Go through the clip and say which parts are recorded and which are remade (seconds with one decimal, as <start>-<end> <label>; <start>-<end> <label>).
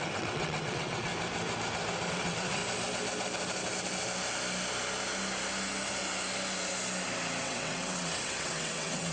0.0-1.1 remade; 1.1-2.1 recorded; 2.1-2.6 remade; 2.6-7.4 recorded; 7.4-9.1 remade